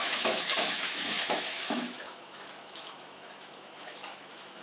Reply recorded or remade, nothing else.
remade